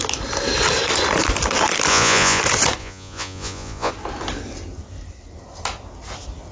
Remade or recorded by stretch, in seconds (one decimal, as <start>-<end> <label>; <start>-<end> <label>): 0.0-1.9 recorded; 1.9-2.4 remade; 2.4-2.8 recorded; 2.8-3.9 remade; 3.9-6.5 recorded